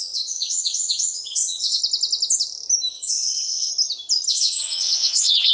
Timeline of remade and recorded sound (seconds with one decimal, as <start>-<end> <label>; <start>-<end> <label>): 0.0-1.8 remade; 1.8-2.9 recorded; 2.9-3.7 remade; 3.7-4.3 recorded; 4.3-5.5 remade